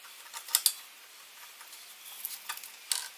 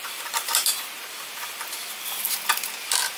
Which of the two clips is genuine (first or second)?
first